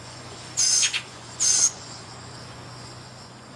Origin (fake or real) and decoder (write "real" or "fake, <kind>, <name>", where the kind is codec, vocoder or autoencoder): fake, vocoder, Vocos